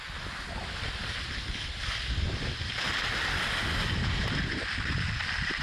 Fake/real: real